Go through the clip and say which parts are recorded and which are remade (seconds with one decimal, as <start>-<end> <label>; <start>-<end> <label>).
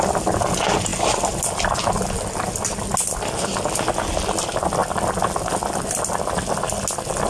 0.0-7.3 recorded